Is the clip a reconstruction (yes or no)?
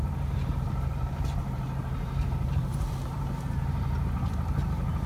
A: yes